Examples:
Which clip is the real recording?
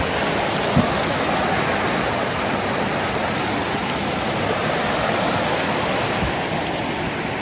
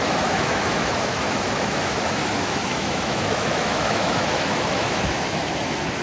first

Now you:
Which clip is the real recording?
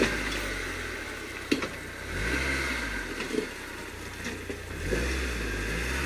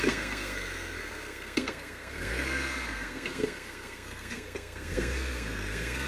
first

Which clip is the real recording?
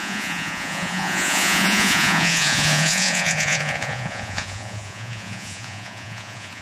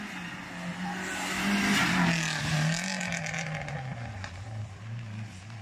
second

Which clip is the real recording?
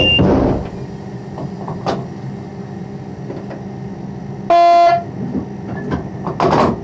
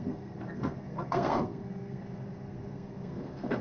first